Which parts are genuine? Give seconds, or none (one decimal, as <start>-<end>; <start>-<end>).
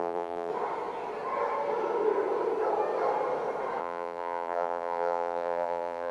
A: 0.5-3.8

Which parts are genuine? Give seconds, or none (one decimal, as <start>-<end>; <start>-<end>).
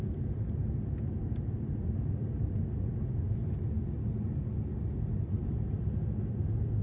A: 0.0-6.8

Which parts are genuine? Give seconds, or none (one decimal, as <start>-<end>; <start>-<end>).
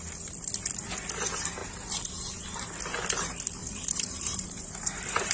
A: 0.0-3.6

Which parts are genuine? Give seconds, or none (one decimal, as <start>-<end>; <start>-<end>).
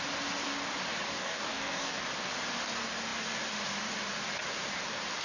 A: 0.0-1.1; 2.0-5.2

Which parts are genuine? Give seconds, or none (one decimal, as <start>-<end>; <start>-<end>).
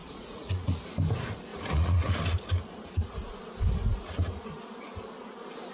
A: 0.8-1.5; 2.2-5.7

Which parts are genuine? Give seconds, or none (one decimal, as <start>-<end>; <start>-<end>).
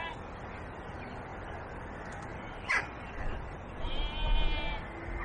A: 0.0-1.3; 1.9-2.3; 4.0-5.2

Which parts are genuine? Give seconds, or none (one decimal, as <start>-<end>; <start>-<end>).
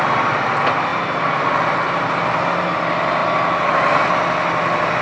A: 0.0-5.0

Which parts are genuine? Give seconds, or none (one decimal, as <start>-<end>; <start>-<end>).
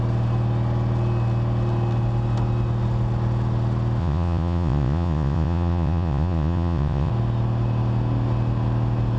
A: 0.0-4.0; 7.1-9.2